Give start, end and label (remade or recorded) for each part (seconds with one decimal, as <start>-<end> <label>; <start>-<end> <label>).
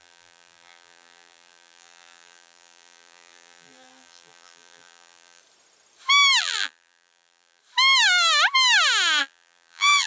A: 0.0-5.4 remade; 5.4-6.4 recorded; 6.4-7.6 remade; 7.6-9.2 recorded; 9.2-10.1 remade